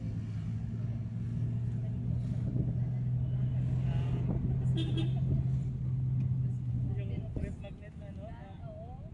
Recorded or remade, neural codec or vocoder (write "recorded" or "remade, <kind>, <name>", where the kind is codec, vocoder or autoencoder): recorded